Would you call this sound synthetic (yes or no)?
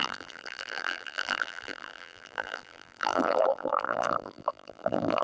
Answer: yes